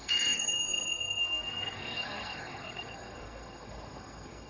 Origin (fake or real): fake